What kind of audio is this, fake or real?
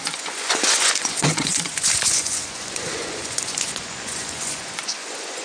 fake